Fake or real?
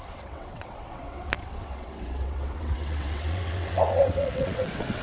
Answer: fake